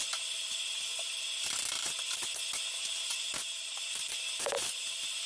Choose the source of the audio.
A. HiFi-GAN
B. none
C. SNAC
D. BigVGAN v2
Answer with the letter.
D